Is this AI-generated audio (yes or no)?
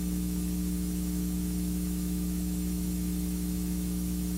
yes